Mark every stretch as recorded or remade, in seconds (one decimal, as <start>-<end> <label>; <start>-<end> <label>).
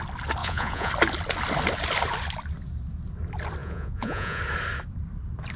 0.0-0.4 recorded; 0.4-0.9 remade; 0.9-3.6 recorded; 3.6-4.4 remade; 4.4-5.6 recorded